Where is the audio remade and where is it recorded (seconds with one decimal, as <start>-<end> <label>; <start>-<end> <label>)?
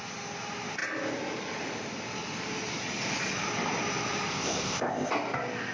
0.0-4.3 recorded; 4.3-5.1 remade; 5.1-5.7 recorded